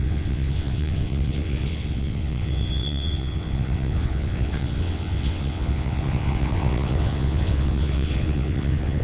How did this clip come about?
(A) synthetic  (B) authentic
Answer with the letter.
A